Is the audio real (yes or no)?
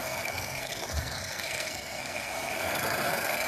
no